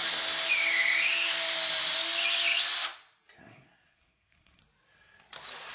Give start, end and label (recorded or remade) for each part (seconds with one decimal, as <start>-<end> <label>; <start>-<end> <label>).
0.0-3.4 recorded; 3.4-4.6 remade; 4.6-5.7 recorded